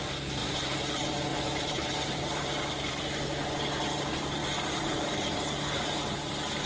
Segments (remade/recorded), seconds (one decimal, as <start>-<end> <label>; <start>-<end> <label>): 0.0-0.4 recorded; 0.4-0.9 remade; 0.9-1.3 recorded; 1.3-2.9 remade; 2.9-6.7 recorded